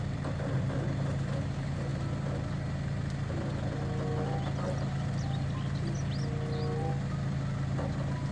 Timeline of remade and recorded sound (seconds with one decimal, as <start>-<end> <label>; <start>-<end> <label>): 0.0-8.3 recorded